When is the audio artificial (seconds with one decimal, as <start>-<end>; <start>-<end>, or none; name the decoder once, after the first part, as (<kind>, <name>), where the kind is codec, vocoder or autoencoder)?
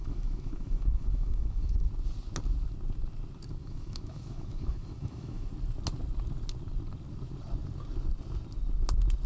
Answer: 0.0-1.9 (autoencoder, DAC-VAE); 3.6-5.5